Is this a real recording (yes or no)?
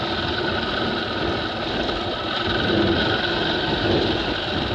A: yes